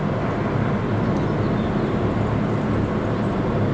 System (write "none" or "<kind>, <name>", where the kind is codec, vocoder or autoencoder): none